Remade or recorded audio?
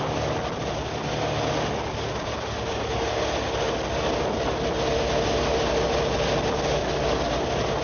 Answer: recorded